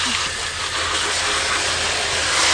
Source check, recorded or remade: recorded